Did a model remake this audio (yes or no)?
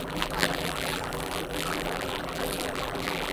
yes